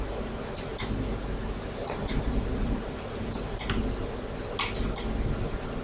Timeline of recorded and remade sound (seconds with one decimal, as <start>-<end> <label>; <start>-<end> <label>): 0.0-1.4 recorded; 1.4-3.8 remade; 3.8-5.8 recorded